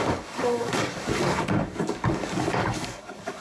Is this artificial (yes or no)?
yes